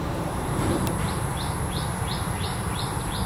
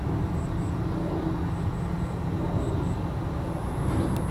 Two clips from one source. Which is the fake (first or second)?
first